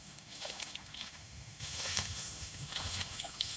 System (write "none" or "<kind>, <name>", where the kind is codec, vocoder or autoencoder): autoencoder, DAC-VAE